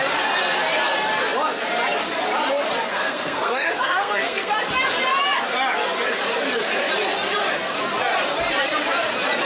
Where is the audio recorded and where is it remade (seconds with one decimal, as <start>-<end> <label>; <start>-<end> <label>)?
0.0-2.9 recorded; 2.9-4.5 remade; 4.5-9.5 recorded